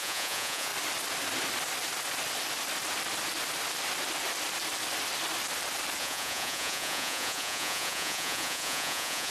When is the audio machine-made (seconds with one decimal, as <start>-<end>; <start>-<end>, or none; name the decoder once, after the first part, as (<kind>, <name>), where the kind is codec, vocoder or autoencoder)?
0.0-0.7 (vocoder, Vocos); 6.0-9.3